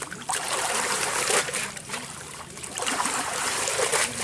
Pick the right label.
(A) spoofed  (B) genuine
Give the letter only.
A